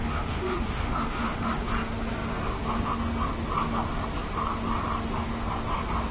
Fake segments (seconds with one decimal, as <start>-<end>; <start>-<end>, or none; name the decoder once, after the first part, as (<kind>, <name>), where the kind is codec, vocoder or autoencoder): 0.0-1.7 (autoencoder, DAC-VAE)